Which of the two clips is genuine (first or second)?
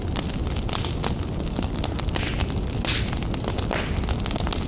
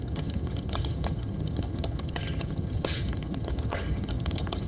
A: first